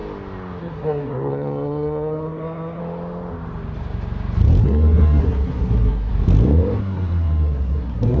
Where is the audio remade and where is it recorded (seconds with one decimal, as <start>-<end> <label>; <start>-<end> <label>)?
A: 0.0-0.6 recorded; 0.6-2.8 remade; 2.8-4.6 recorded; 4.6-6.1 remade; 6.1-6.8 recorded; 6.8-8.2 remade